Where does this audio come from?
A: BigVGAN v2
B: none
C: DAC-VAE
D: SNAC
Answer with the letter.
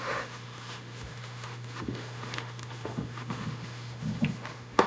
C